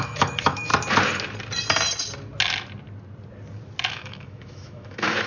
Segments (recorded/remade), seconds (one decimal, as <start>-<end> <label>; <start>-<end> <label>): 0.0-0.7 remade; 0.7-3.9 recorded; 3.9-5.3 remade